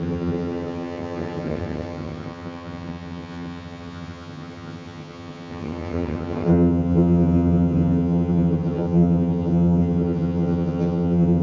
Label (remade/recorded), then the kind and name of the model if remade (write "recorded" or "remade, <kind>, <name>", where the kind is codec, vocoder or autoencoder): remade, vocoder, HiFi-GAN